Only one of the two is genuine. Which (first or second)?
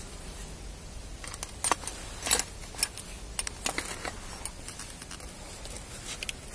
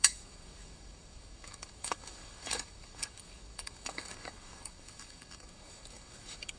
first